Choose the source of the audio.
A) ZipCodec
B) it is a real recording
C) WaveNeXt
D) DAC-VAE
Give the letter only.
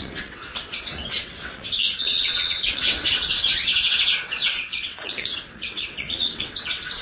C